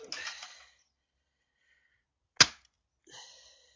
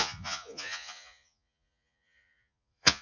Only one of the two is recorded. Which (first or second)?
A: first